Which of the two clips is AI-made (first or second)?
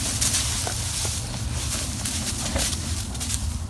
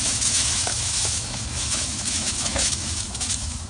second